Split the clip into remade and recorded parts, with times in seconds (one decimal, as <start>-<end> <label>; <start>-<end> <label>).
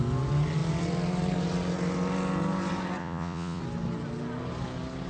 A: 0.0-3.0 recorded; 3.0-3.6 remade; 3.6-5.1 recorded